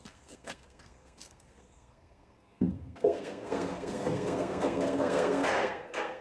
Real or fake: fake